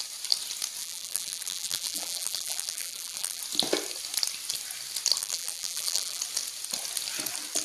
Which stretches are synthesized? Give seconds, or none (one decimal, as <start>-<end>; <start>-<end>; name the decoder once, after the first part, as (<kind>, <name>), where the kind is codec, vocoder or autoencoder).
0.8-3.4 (vocoder, BigVGAN v2); 5.2-6.2